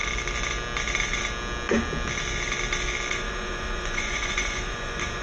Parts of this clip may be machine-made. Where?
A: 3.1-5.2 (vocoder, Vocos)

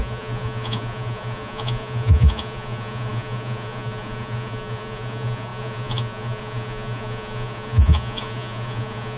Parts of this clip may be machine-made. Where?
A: 0.0-9.2 (vocoder, Vocos)

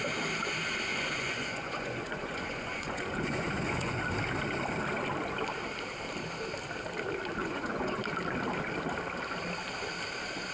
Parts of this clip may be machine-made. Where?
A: 0.9-4.0 (vocoder, Vocos); 7.4-8.0

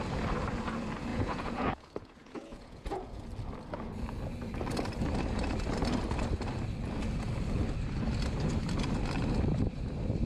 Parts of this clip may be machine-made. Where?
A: 1.1-3.1 (vocoder, Vocos)

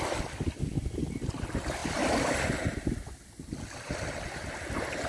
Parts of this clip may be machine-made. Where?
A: none

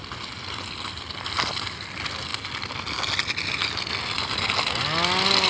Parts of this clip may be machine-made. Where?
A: none

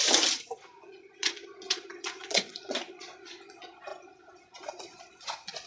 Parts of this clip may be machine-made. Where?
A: 0.9-3.9 (vocoder, Vocos); 4.8-5.7